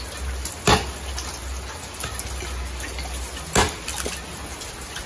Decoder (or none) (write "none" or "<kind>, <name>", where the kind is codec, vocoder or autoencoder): none